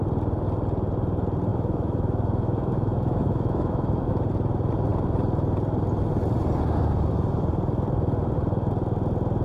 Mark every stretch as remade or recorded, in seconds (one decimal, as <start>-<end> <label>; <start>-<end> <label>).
0.0-1.5 recorded; 1.5-4.1 remade; 4.1-9.4 recorded